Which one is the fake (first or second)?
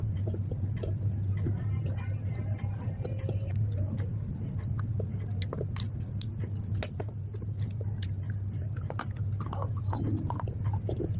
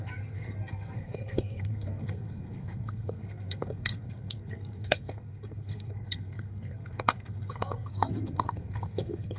second